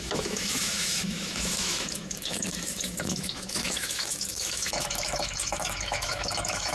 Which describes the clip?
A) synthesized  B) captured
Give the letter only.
A